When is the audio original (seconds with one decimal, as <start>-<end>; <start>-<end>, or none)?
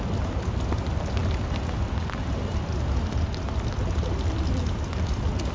0.0-5.5